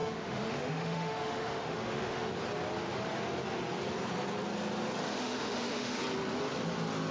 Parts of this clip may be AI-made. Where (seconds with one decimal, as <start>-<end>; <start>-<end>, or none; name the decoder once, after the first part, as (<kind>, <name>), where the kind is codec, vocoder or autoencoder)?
0.0-2.3 (autoencoder, DAC-VAE); 5.1-6.0